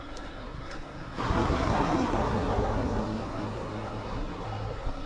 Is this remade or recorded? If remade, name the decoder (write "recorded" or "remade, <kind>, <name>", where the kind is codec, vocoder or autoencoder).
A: remade, codec, SNAC